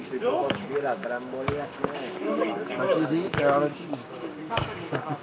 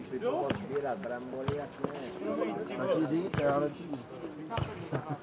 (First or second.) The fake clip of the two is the first